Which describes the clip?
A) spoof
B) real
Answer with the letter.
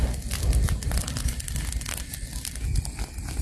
B